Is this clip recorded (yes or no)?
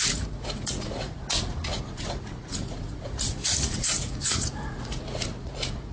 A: no